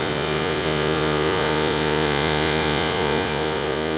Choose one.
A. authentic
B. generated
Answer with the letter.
B